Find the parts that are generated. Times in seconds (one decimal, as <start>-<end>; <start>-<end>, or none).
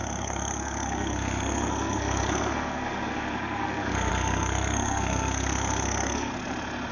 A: 0.0-6.3